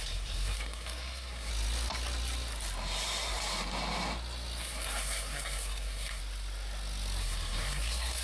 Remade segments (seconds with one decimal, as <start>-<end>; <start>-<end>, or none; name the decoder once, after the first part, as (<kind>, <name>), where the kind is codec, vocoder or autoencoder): 0.0-1.5 (codec, SNAC); 4.6-6.2; 7.2-8.2